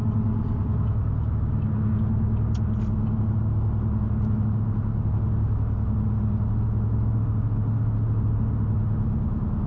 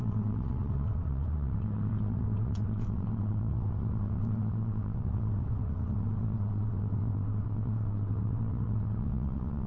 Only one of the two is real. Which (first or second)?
first